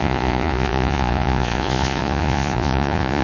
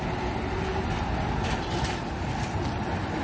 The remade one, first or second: first